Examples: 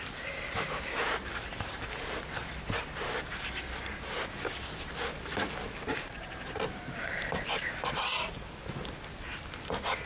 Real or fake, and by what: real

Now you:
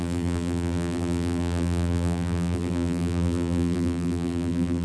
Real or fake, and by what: fake, vocoder, BigVGAN v2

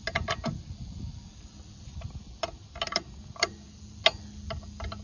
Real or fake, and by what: real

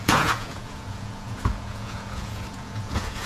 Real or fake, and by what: fake, vocoder, Vocos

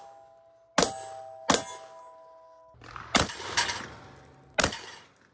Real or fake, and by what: real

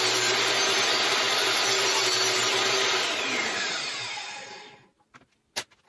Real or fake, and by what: real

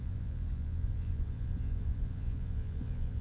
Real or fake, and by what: fake, vocoder, Vocos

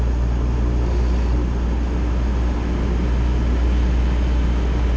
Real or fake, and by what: real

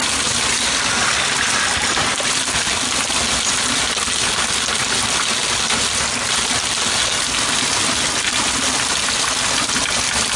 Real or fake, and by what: real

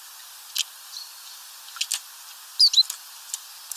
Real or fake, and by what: real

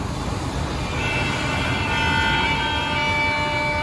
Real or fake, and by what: real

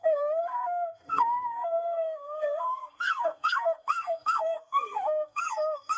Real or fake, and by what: fake, codec, SNAC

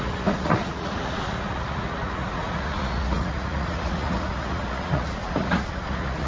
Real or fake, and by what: fake, vocoder, Vocos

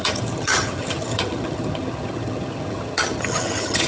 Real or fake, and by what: fake, vocoder, HiFi-GAN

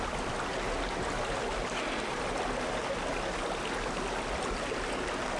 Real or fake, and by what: real